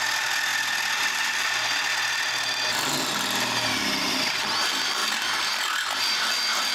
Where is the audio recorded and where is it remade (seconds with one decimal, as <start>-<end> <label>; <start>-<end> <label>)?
0.0-6.7 recorded